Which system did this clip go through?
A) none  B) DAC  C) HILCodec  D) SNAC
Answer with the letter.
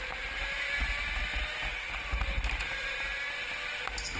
A